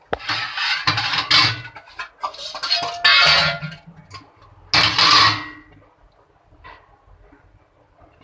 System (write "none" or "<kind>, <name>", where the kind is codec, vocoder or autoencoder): none